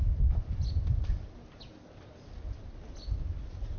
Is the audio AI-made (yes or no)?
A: no